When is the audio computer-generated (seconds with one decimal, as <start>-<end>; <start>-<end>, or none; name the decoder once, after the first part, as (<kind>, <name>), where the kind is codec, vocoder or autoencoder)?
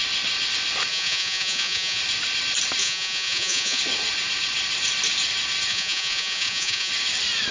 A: 0.9-2.0 (vocoder, Vocos); 2.8-3.8; 5.7-6.9